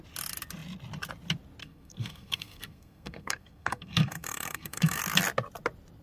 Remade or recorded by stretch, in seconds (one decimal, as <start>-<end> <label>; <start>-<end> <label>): 0.0-1.6 recorded; 1.6-5.0 remade; 5.0-6.0 recorded